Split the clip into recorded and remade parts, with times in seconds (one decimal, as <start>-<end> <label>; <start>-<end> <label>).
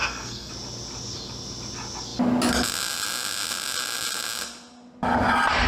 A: 0.0-0.5 remade; 0.5-5.7 recorded